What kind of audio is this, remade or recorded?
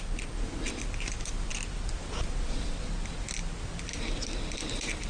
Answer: recorded